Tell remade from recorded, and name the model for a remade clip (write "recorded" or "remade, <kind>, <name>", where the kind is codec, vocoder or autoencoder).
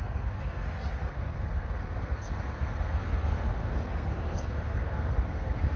remade, codec, SNAC